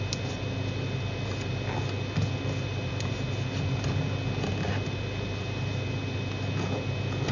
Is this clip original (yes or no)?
yes